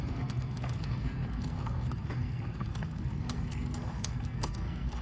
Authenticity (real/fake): fake